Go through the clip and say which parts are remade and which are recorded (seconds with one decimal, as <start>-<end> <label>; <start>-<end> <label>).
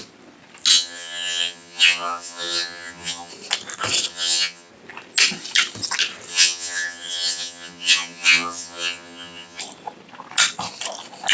0.0-0.7 recorded; 0.7-3.3 remade; 3.3-4.1 recorded; 4.1-4.7 remade; 4.7-6.3 recorded; 6.3-9.6 remade; 9.6-11.3 recorded